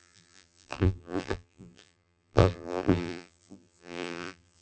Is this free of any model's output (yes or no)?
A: no